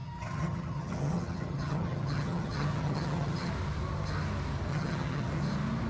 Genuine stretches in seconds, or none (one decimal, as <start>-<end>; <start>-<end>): 3.5-4.7; 5.3-5.9